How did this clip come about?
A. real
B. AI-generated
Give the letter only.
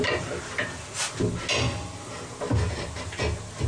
A